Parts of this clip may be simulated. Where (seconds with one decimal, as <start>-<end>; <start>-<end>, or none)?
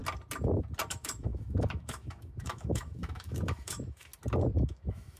0.9-4.1; 4.6-5.2